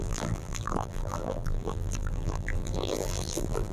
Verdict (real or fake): fake